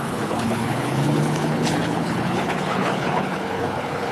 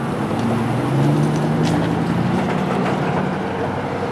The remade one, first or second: first